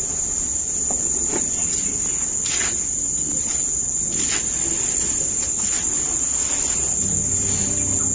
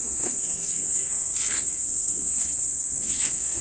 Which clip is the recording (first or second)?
first